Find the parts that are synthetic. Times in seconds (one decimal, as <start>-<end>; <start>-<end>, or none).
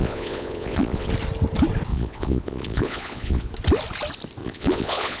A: 0.0-1.1; 1.9-3.5; 4.4-5.2